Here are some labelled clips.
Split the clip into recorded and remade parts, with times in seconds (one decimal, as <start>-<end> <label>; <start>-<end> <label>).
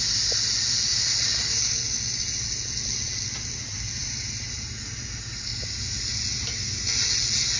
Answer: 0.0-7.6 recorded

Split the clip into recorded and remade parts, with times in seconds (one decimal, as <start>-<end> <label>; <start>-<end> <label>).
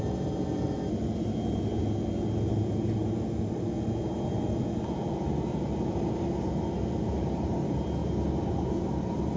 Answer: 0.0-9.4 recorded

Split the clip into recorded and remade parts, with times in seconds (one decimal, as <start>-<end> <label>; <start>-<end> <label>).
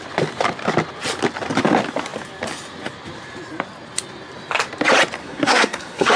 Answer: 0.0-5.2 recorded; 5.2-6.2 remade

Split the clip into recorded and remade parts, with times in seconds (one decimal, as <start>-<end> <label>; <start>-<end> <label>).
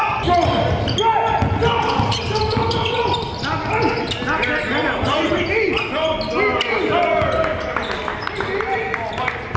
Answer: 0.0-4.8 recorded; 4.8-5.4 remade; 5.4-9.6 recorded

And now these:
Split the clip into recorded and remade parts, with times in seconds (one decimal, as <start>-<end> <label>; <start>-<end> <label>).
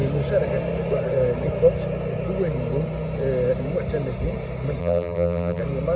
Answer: 0.0-4.8 recorded; 4.8-5.6 remade; 5.6-6.0 recorded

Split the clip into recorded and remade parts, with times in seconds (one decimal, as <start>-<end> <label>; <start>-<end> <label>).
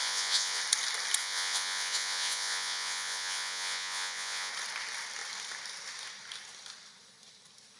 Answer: 0.0-0.6 remade; 0.6-1.2 recorded; 1.2-4.5 remade; 4.5-7.8 recorded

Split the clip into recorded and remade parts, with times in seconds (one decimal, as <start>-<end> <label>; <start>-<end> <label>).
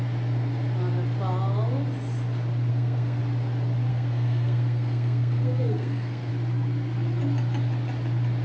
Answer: 0.0-2.7 recorded; 2.7-3.2 remade; 3.2-3.9 recorded; 3.9-6.3 remade; 6.3-8.4 recorded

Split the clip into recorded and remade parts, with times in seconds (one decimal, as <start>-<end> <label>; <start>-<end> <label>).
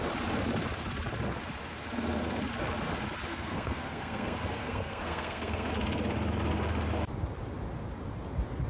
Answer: 0.0-3.3 recorded; 3.3-5.7 remade; 5.7-8.7 recorded